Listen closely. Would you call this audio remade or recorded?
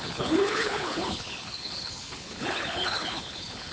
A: remade